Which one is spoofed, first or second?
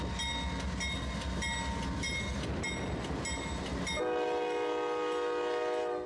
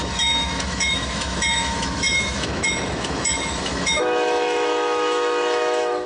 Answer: second